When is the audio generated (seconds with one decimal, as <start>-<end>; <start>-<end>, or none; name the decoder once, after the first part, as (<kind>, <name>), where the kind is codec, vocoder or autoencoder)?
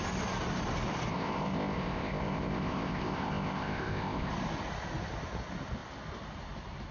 1.1-4.3 (codec, ZipCodec)